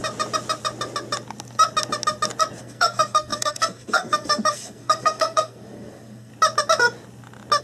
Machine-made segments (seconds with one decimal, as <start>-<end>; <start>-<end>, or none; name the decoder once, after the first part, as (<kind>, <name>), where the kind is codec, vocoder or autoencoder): 2.6-6.3 (codec, SNAC)